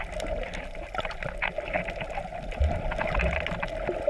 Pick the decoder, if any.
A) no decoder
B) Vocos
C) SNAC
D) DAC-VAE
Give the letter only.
A